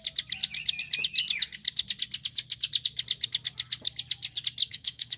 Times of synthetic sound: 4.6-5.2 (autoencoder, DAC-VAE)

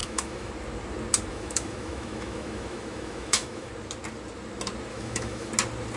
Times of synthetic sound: 0.0-0.5 (autoencoder, DAC-VAE); 1.3-3.7; 4.9-5.5

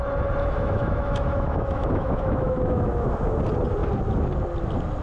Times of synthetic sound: 0.4-3.4 (autoencoder, DAC-VAE)

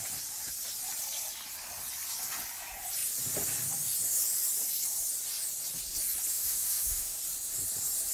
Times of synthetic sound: 6.3-7.2 (autoencoder, DAC-VAE)